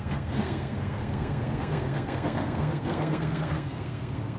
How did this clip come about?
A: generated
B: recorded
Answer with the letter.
A